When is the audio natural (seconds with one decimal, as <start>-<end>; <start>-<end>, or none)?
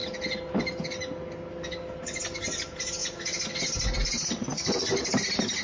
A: 0.0-4.5; 5.1-5.6